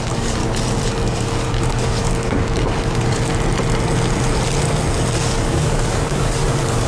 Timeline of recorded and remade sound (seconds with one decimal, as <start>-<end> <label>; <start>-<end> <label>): 0.0-0.4 remade; 0.4-1.1 recorded; 1.1-3.3 remade; 3.3-5.2 recorded; 5.2-6.9 remade